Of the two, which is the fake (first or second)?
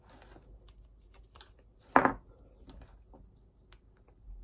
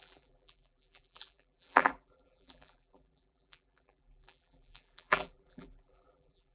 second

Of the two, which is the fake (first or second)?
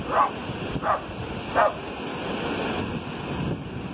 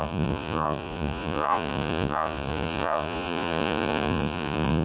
second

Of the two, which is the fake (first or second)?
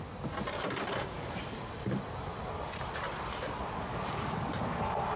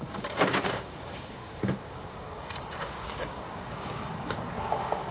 second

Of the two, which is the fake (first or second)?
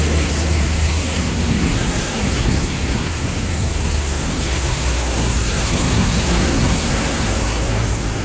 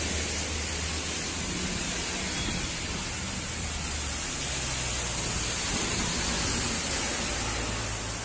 first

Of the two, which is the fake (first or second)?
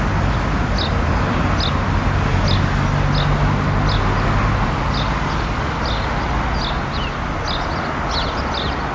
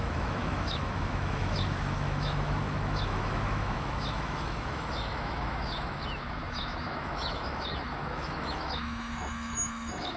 second